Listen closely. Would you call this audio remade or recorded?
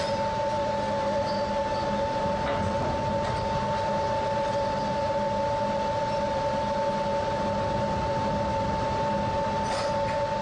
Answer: recorded